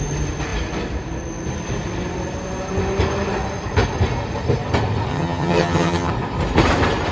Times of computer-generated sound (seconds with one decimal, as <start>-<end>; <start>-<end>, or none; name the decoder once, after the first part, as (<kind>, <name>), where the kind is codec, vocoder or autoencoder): 5.1-6.1 (vocoder, HiFi-GAN)